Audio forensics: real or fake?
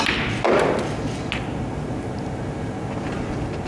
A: real